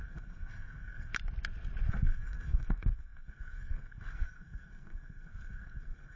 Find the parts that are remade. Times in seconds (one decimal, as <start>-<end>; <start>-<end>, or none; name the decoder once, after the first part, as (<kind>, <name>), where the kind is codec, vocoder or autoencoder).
0.0-1.1 (codec, SNAC); 1.9-6.2